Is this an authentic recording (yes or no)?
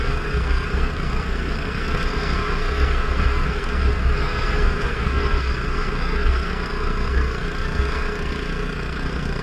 no